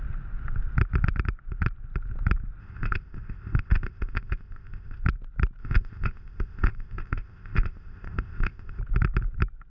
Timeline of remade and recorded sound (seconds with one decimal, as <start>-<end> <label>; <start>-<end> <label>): 0.0-2.6 recorded; 2.6-5.0 remade; 5.0-5.6 recorded; 5.6-8.8 remade; 8.8-9.7 recorded

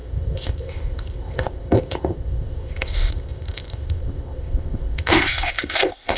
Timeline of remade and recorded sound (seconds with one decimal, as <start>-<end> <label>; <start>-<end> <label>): 0.0-6.2 remade

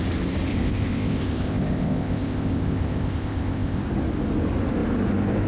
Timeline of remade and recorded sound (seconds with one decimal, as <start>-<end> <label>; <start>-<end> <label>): 0.0-0.5 recorded; 0.5-3.8 remade; 3.8-5.5 recorded

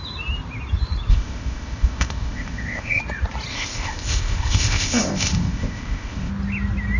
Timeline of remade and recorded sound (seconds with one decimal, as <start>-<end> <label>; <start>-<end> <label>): 0.0-1.1 recorded; 1.1-3.0 remade; 3.0-3.5 recorded; 3.5-6.3 remade; 6.3-7.0 recorded

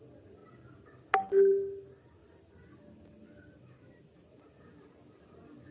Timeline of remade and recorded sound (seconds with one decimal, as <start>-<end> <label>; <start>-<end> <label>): 0.0-5.7 recorded